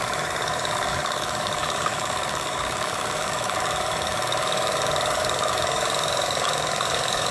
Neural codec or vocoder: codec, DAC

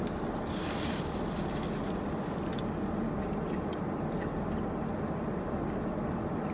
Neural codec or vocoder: none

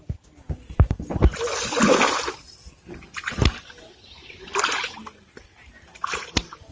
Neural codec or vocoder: none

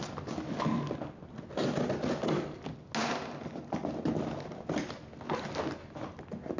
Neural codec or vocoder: none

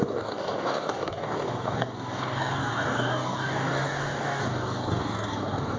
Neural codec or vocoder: codec, DAC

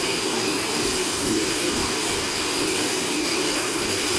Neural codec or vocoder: codec, DAC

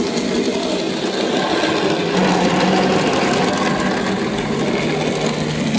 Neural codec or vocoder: none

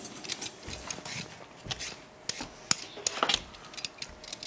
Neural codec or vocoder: none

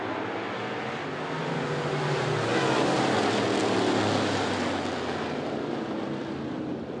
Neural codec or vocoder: none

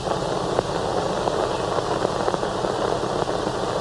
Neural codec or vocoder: none